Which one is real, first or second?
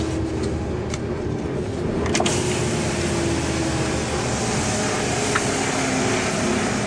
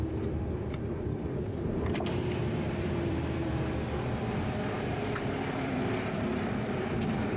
first